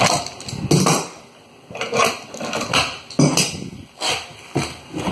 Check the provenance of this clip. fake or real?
real